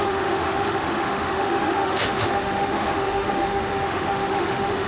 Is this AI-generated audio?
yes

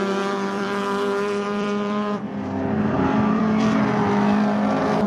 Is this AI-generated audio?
yes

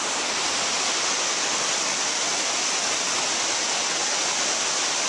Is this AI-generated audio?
no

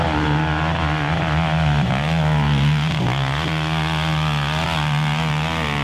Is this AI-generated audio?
no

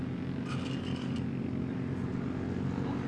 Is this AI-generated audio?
no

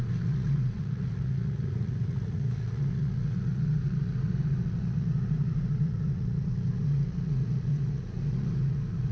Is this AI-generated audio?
yes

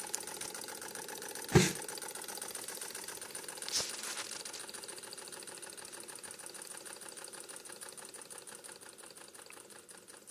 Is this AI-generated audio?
no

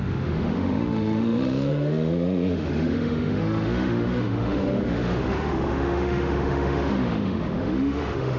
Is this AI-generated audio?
yes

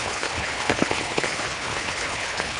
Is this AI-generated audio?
yes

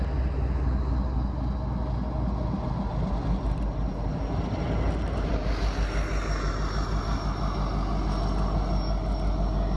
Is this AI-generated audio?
no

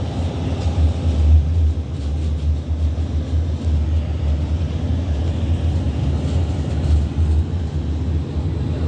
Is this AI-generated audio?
no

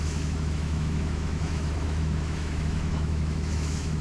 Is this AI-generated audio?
yes